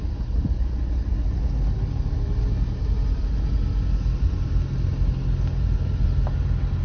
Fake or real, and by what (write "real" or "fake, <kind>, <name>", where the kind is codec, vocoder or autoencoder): real